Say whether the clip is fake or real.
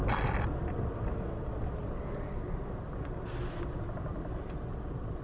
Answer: real